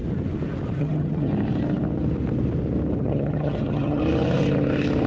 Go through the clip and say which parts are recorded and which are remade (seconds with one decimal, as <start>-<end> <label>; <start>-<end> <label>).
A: 0.0-0.8 recorded; 0.8-1.3 remade; 1.3-3.0 recorded; 3.0-4.0 remade; 4.0-5.1 recorded